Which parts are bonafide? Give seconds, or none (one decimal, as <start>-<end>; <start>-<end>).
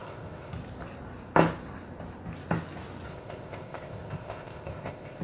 0.5-3.1